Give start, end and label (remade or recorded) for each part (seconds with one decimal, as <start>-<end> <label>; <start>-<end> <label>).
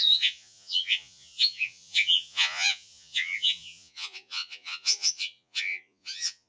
0.0-6.5 remade